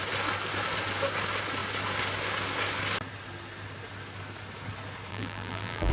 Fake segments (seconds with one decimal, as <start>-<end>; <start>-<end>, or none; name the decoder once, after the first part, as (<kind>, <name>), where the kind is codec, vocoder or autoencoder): 5.1-5.9 (vocoder, BigVGAN v2)